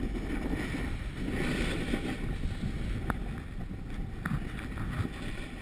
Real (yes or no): yes